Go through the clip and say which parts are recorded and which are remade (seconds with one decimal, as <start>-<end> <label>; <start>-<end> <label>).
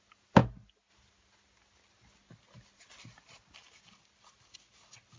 0.0-5.2 recorded